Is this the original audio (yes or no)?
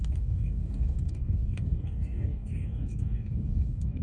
no